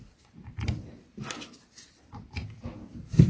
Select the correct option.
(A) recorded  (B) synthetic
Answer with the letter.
B